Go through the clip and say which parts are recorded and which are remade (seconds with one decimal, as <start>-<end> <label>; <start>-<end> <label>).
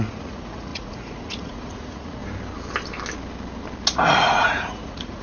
0.0-2.2 remade; 2.2-4.1 recorded; 4.1-5.2 remade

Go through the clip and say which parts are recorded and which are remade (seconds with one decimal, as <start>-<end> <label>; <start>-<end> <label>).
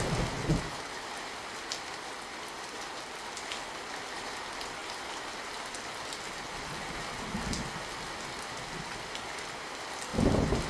0.0-10.7 recorded